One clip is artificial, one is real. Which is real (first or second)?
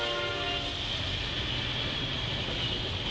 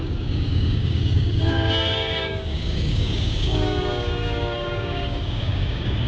first